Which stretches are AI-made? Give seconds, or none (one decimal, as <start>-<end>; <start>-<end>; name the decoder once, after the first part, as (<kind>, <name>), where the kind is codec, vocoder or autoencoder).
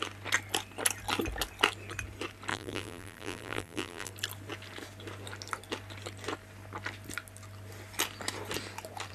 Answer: 2.5-4.1 (vocoder, BigVGAN v2)